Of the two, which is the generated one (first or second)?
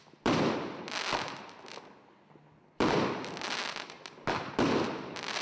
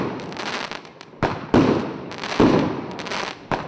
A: second